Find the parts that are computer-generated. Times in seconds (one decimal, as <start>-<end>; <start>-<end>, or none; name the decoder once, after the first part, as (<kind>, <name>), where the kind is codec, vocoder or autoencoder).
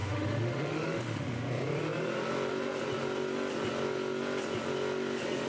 0.0-1.5 (autoencoder, DAC-VAE)